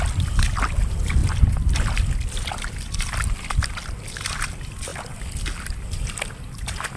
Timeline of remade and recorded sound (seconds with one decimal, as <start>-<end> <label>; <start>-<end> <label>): 0.0-7.0 recorded

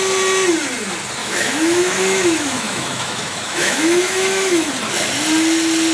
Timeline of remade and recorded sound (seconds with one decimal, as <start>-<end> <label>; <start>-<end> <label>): 0.0-1.2 recorded; 1.2-4.7 remade; 4.7-5.9 recorded

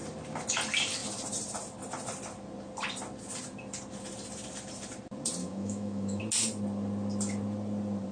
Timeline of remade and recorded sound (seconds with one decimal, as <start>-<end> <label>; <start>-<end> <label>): 0.0-5.4 recorded; 5.4-6.2 remade; 6.2-8.1 recorded